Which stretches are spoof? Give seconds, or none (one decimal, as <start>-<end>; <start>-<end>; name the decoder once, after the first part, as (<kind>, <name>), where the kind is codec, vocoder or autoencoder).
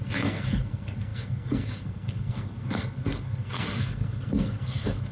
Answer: 0.0-5.1 (codec, SNAC)